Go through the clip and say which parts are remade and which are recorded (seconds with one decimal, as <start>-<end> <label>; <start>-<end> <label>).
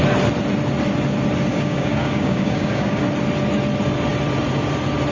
0.0-1.5 recorded; 1.5-3.0 remade; 3.0-5.1 recorded